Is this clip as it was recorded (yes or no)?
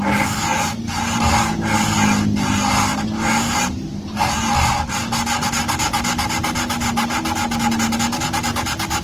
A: yes